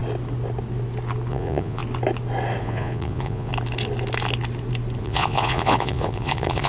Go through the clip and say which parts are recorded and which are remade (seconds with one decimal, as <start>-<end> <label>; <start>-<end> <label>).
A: 0.0-1.3 recorded; 1.3-1.8 remade; 1.8-2.6 recorded; 2.6-3.5 remade; 3.5-5.0 recorded; 5.0-6.7 remade